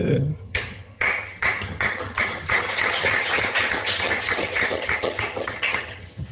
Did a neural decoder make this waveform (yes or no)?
yes